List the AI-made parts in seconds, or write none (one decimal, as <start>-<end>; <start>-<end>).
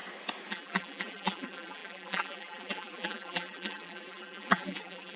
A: 0.5-5.2